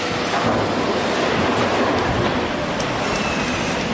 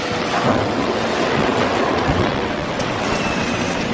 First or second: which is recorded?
first